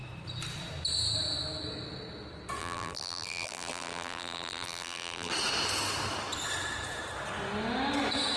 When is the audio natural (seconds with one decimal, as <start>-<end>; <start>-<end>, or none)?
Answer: 0.0-2.6; 5.3-8.4